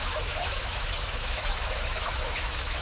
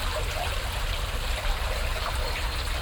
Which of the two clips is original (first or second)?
second